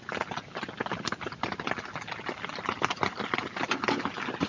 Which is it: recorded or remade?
recorded